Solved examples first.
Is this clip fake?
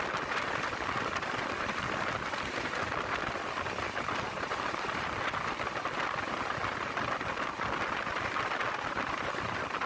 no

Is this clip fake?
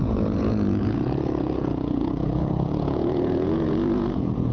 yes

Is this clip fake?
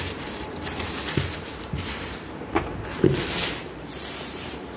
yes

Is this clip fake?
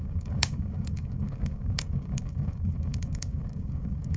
yes